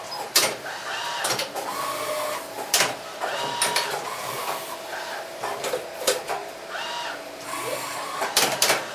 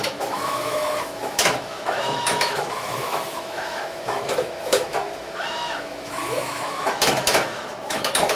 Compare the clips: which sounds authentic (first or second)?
first